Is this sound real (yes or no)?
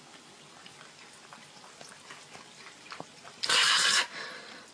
yes